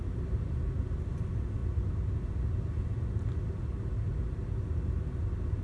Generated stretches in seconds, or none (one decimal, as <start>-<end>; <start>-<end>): 0.0-0.6

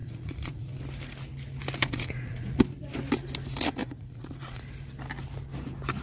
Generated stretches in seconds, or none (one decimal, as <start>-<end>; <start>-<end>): 0.0-0.8; 1.8-2.6; 3.8-4.6

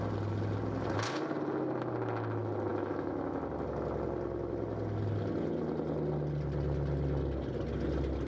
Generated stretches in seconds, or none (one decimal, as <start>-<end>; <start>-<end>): 2.7-3.4